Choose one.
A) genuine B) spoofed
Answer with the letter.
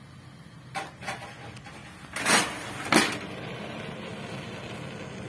A